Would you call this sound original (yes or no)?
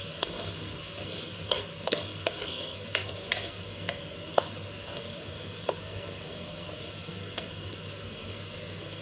no